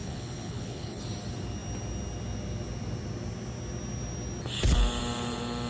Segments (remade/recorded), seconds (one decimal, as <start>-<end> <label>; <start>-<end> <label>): 0.0-1.0 remade; 1.0-5.7 recorded